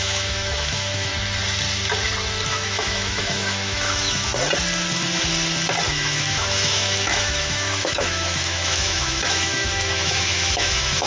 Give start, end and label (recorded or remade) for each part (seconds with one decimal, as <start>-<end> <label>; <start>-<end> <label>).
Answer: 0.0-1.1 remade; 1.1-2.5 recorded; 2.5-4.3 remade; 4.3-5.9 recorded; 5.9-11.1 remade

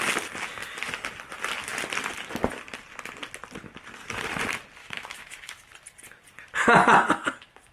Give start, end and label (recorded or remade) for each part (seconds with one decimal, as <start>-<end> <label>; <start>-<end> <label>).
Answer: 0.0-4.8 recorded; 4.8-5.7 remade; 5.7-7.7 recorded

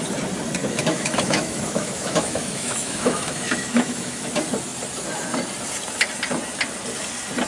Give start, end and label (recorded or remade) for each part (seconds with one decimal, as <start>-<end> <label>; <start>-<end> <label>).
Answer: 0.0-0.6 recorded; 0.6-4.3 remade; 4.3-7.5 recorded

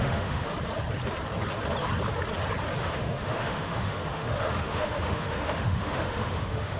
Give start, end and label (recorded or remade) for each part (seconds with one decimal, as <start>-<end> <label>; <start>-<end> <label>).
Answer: 0.0-0.5 remade; 0.5-2.8 recorded; 2.8-6.8 remade

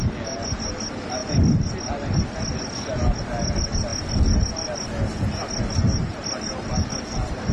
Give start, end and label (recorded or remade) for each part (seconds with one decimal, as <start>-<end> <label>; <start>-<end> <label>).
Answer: 0.0-7.5 recorded

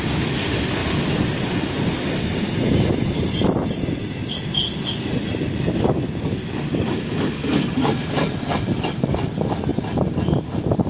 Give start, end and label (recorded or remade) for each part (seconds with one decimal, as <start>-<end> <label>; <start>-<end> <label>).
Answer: 0.0-10.9 recorded

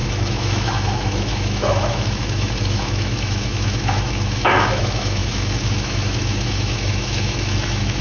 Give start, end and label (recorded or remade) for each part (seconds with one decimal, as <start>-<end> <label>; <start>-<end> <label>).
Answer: 0.0-8.0 remade

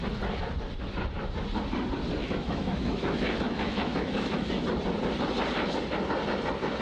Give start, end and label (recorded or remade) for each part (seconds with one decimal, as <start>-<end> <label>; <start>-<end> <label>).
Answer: 0.0-2.2 recorded; 2.2-4.6 remade; 4.6-6.8 recorded